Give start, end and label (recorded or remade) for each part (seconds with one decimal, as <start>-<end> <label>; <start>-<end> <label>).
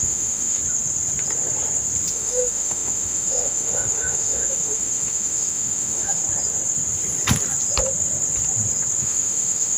0.0-0.6 remade; 0.6-2.1 recorded; 2.1-6.2 remade; 6.2-9.0 recorded; 9.0-9.8 remade